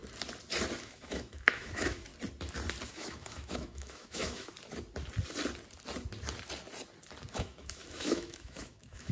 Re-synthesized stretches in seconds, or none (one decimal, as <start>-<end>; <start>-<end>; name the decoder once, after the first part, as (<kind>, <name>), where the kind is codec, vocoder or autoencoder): 0.8-2.1 (autoencoder, DAC-VAE); 2.9-4.5; 7.3-9.1